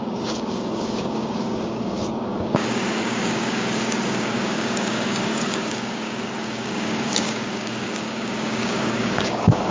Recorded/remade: remade